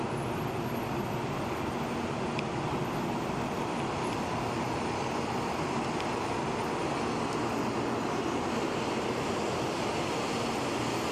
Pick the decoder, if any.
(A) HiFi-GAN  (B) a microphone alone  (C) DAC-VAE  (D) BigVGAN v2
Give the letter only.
B